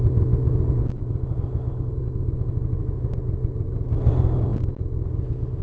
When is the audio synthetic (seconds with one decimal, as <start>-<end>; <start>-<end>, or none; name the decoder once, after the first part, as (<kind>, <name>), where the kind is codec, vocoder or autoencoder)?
none